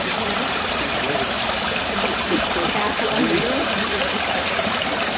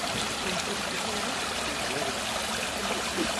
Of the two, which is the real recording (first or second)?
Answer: second